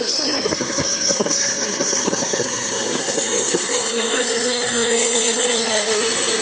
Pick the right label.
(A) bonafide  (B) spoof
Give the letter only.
B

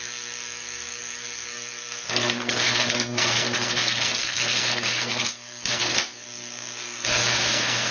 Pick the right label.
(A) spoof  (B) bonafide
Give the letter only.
A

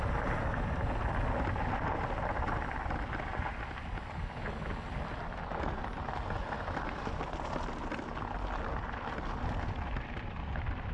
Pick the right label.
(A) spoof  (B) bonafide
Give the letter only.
B